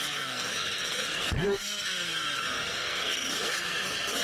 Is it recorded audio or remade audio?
remade